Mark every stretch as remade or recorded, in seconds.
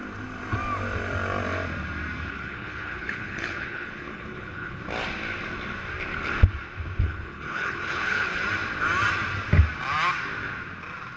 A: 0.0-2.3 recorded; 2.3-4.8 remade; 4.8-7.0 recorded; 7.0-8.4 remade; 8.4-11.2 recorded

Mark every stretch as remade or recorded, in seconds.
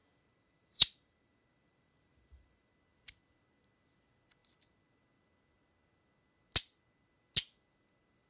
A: 0.0-2.7 remade; 2.7-8.3 recorded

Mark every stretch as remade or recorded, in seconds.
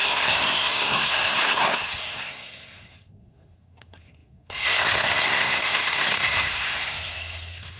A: 0.0-7.8 remade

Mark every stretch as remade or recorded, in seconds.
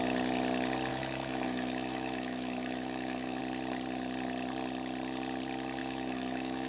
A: 0.0-0.9 recorded; 0.9-3.4 remade; 3.4-5.8 recorded; 5.8-6.7 remade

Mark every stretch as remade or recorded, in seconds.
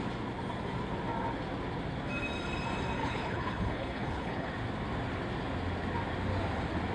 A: 0.0-3.0 recorded; 3.0-4.5 remade; 4.5-6.9 recorded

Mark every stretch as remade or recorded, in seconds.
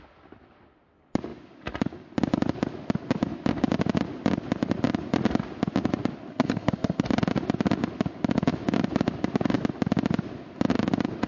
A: 0.0-6.3 recorded; 6.3-7.1 remade; 7.1-11.3 recorded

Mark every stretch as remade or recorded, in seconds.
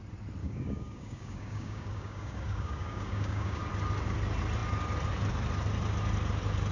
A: 0.0-0.4 recorded; 0.4-3.6 remade; 3.6-6.7 recorded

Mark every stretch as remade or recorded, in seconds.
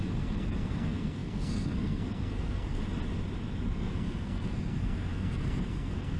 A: 0.0-2.8 remade; 2.8-3.7 recorded; 3.7-6.2 remade